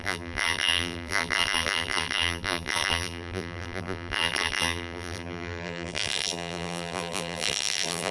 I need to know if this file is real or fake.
fake